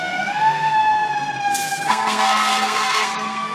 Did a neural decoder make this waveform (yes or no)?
yes